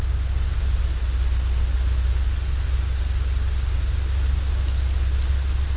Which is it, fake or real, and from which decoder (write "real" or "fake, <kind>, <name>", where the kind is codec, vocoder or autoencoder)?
real